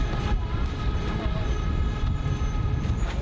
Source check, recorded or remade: recorded